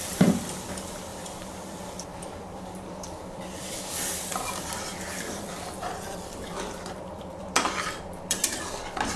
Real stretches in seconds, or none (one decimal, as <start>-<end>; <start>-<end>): none